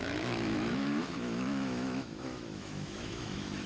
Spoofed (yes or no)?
yes